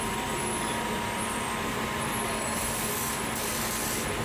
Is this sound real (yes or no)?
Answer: yes